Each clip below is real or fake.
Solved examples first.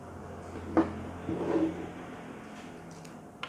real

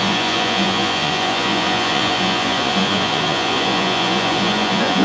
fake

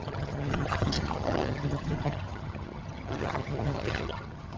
fake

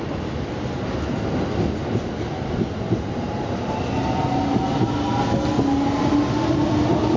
real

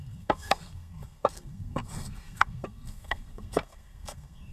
fake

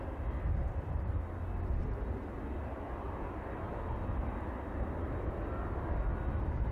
real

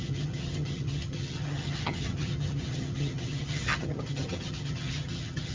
fake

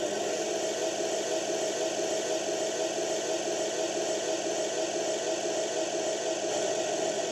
fake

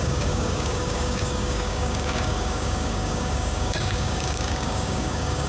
fake